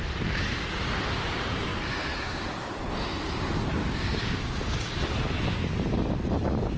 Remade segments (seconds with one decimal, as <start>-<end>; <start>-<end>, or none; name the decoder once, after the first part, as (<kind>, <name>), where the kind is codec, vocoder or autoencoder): 3.8-5.0 (codec, DAC)